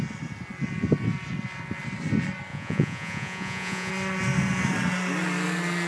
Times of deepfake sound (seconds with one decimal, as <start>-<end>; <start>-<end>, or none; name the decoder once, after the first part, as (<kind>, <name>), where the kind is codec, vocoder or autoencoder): 2.5-3.9 (vocoder, Vocos)